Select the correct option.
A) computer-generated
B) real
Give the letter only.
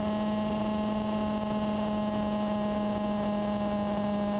B